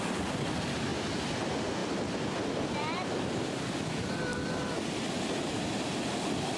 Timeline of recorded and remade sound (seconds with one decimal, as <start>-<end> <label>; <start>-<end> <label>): 0.0-0.9 remade; 0.9-1.4 recorded; 1.4-1.8 remade; 1.8-2.8 recorded; 2.8-5.9 remade; 5.9-6.6 recorded